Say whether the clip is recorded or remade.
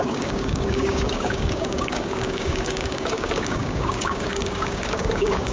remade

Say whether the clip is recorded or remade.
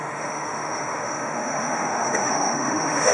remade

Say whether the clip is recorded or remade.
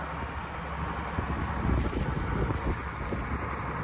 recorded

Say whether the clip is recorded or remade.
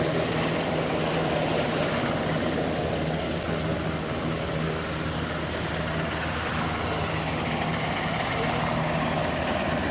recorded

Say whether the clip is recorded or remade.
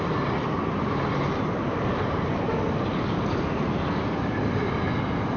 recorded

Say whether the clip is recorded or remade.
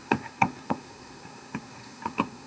remade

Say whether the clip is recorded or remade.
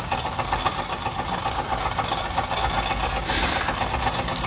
recorded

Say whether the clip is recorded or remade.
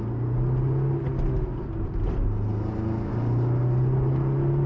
recorded